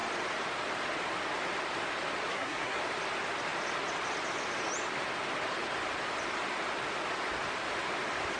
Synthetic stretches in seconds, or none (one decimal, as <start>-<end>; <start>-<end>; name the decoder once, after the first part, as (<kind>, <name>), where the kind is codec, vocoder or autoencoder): 2.3-2.8 (codec, SNAC)